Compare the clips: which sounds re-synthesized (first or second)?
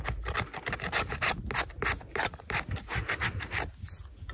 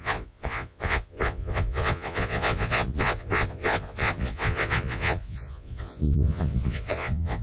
second